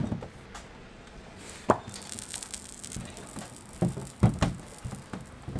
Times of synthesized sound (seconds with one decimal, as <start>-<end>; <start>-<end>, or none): 0.8-1.4